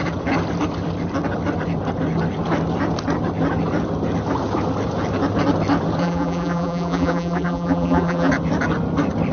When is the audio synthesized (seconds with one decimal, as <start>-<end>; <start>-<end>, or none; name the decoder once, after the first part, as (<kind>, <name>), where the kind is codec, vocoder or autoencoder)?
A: 6.0-8.3 (vocoder, BigVGAN v2)